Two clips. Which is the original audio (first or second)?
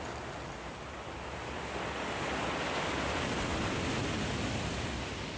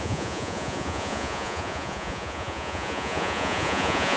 first